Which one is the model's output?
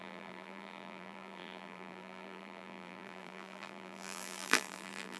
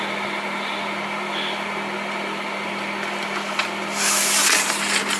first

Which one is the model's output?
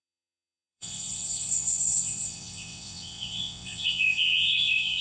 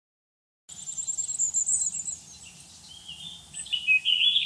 first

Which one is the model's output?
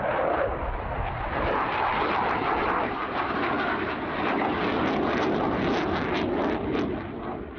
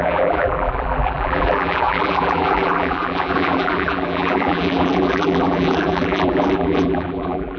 second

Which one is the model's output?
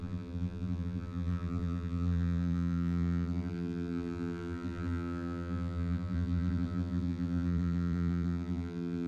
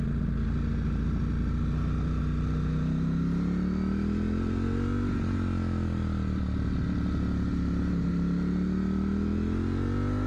first